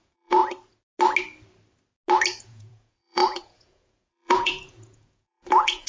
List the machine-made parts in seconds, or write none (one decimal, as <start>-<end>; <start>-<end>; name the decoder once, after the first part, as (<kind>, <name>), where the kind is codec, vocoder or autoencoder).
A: 0.0-0.4 (vocoder, Vocos); 2.4-5.9